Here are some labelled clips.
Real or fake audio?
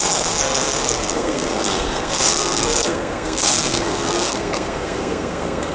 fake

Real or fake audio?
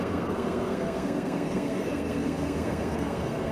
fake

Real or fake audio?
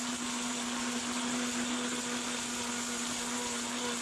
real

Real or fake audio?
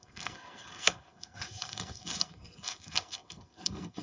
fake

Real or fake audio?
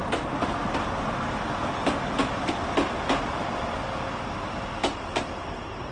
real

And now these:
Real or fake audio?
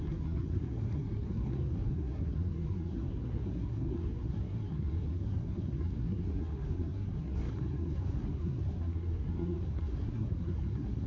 fake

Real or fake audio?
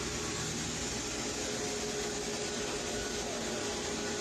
real